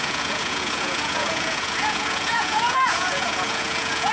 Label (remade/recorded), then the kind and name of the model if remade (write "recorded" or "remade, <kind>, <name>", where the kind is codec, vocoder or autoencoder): remade, vocoder, Vocos